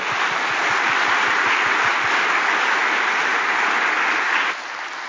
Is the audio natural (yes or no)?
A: yes